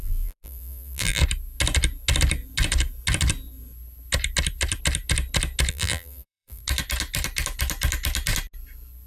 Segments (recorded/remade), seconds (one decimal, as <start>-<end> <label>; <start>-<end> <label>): 0.0-1.2 remade; 1.2-5.7 recorded; 5.7-6.6 remade; 6.6-9.1 recorded